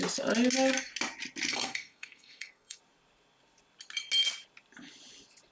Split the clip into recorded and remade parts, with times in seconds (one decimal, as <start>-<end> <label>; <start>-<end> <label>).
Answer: 0.0-1.5 recorded; 1.5-2.8 remade; 2.8-5.5 recorded